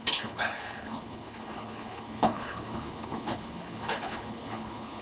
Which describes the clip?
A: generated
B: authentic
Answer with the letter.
A